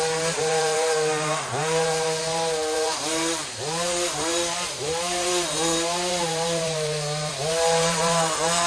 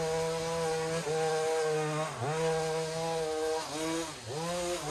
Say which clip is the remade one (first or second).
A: first